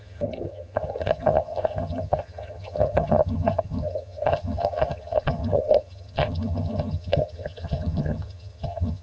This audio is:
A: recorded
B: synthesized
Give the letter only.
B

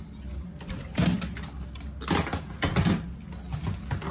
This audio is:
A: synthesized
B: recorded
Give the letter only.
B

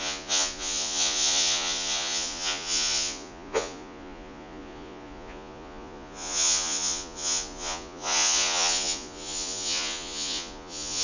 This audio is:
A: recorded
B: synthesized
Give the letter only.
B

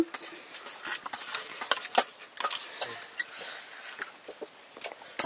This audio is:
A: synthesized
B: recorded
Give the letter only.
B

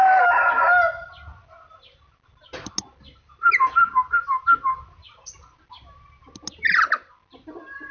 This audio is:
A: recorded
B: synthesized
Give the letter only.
A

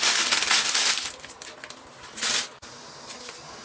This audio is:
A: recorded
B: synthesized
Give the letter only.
A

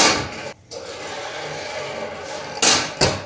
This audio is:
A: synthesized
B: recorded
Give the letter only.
B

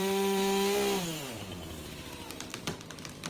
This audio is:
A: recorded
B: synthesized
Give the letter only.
B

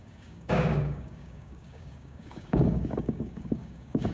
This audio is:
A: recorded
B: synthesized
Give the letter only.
B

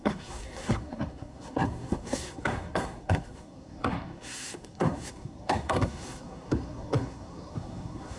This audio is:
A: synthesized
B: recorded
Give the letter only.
A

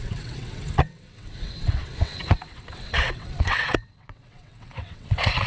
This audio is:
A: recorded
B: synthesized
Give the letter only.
B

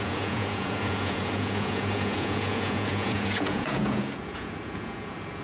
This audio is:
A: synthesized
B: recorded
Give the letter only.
A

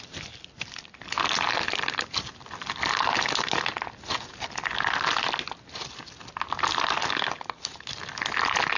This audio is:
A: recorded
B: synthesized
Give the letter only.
A